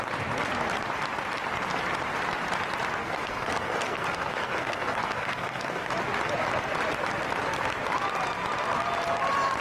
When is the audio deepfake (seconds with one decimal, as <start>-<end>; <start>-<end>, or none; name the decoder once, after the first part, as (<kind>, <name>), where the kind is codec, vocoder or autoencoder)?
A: 3.0-5.9 (codec, SNAC)